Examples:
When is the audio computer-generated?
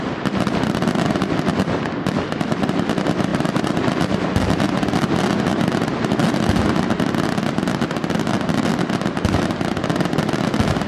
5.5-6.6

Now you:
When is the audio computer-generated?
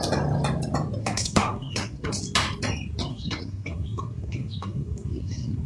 1.0-2.1; 3.1-5.7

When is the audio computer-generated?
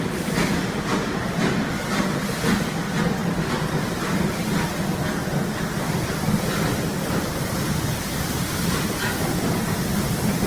6.9-9.0